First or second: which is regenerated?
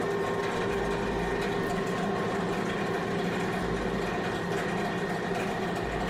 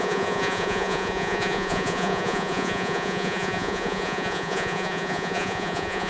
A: second